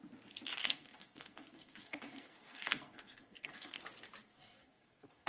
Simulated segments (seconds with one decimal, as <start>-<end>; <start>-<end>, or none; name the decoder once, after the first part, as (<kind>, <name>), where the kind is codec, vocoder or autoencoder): 0.6-3.8 (codec, SNAC); 4.2-5.3